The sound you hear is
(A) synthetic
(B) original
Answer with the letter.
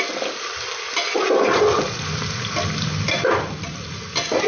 B